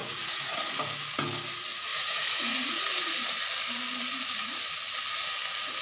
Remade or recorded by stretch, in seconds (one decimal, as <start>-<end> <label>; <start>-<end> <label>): 0.0-0.6 remade; 0.6-1.9 recorded; 1.9-2.8 remade; 2.8-5.8 recorded